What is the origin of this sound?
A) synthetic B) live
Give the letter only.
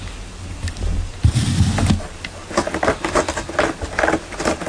B